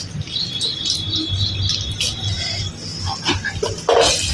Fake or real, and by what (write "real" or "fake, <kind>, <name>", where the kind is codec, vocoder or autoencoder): real